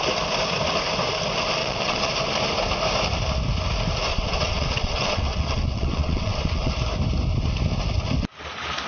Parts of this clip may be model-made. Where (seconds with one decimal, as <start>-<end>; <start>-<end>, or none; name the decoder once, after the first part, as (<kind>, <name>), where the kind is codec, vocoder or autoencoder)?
1.6-2.1 (vocoder, WaveNeXt); 4.1-6.7